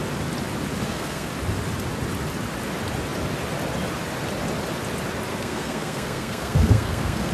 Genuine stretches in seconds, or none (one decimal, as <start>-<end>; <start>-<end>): 0.0-0.8; 1.3-5.3